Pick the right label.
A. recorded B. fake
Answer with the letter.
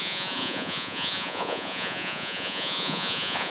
B